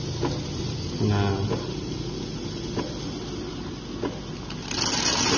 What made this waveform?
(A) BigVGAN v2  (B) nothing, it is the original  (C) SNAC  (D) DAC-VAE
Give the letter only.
B